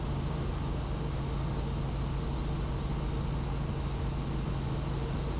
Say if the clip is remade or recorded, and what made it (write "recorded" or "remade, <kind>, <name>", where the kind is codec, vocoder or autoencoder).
recorded